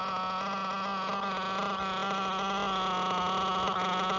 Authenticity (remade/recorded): recorded